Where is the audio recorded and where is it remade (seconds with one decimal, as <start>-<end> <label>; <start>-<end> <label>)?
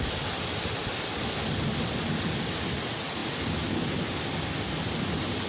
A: 0.0-5.5 recorded